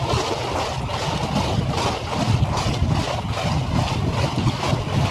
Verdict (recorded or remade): recorded